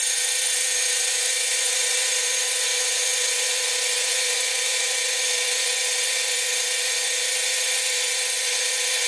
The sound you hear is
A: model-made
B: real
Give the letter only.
A